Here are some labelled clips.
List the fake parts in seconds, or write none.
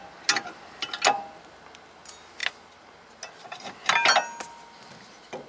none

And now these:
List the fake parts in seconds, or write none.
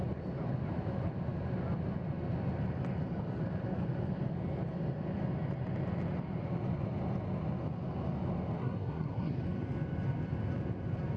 8.6-9.3 (codec, SNAC)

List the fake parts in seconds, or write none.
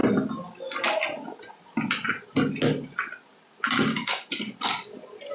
3.9-4.4 (codec, DAC)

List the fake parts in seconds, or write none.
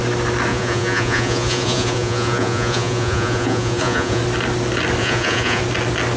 0.5-4.2 (vocoder, Vocos); 5.0-5.6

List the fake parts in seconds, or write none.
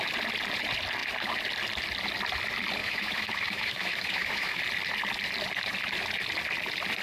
2.8-4.6 (autoencoder, DAC-VAE)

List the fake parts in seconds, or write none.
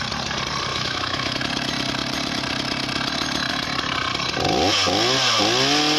0.7-1.4 (autoencoder, DAC-VAE)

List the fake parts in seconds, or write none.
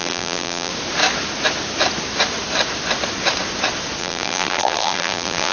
0.0-0.7 (vocoder, BigVGAN v2); 4.0-5.5